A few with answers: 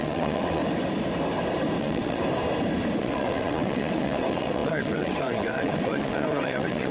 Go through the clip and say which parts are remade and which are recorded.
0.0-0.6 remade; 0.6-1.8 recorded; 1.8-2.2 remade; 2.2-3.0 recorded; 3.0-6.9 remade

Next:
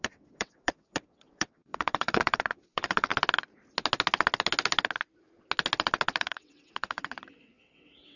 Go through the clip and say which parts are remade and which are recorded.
0.0-3.1 remade; 3.1-6.2 recorded; 6.2-8.2 remade